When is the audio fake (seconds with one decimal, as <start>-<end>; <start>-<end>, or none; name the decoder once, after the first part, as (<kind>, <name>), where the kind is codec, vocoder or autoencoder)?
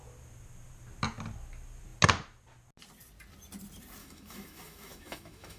4.0-5.6 (autoencoder, DAC-VAE)